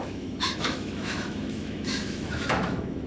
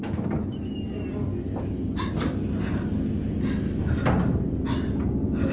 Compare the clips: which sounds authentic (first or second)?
second